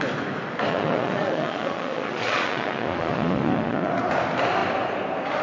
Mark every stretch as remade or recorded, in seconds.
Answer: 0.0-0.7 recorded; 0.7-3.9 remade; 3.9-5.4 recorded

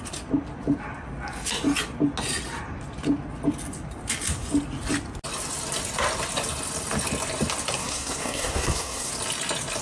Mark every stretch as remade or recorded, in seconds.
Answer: 0.0-7.8 recorded; 7.8-9.1 remade; 9.1-9.8 recorded